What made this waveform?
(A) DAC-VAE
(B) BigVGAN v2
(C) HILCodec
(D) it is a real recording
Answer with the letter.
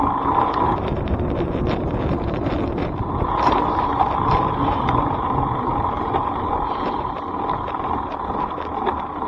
B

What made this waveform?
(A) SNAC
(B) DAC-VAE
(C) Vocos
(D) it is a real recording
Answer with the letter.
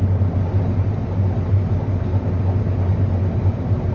D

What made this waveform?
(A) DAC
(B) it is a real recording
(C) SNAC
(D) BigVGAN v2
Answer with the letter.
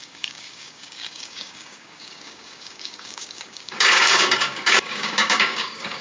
A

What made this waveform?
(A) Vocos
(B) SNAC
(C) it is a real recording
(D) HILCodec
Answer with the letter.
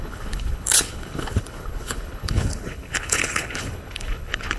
D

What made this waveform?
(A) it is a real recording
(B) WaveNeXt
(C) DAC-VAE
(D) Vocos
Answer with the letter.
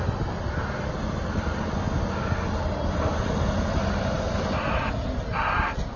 A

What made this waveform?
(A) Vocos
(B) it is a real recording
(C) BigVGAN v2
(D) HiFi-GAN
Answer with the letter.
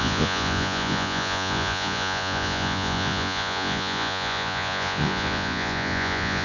A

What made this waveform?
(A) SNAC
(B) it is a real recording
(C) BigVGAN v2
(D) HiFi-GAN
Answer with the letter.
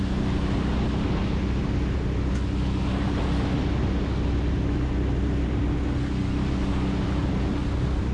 B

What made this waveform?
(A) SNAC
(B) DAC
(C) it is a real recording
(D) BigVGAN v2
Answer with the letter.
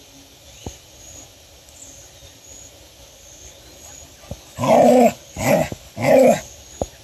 C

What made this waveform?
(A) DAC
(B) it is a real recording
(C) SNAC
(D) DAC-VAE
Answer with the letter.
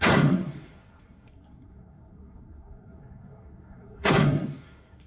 C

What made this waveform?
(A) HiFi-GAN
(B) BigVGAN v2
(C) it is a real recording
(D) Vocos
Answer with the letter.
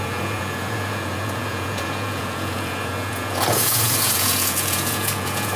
D